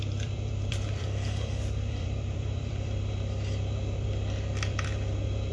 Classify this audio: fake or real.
fake